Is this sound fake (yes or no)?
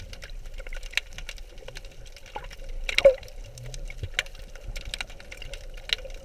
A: no